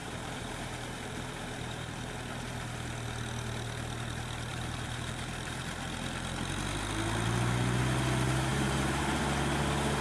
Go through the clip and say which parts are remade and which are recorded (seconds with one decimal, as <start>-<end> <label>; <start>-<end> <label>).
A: 0.0-2.1 remade; 2.1-4.5 recorded; 4.5-5.6 remade; 5.6-8.5 recorded; 8.5-9.2 remade; 9.2-10.0 recorded